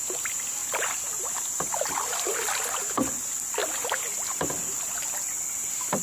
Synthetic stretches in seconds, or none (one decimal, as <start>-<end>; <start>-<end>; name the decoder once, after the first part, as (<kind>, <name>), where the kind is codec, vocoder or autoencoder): none